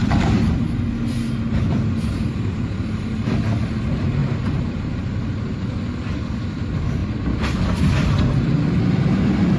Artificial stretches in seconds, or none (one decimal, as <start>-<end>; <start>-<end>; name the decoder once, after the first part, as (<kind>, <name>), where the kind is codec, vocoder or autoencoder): 4.2-4.9 (vocoder, BigVGAN v2)